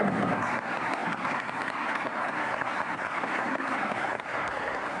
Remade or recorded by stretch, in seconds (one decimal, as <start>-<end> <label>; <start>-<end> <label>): 0.0-5.0 remade